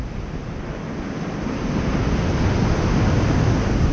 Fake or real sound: real